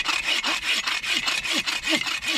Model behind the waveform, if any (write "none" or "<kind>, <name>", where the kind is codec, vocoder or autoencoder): none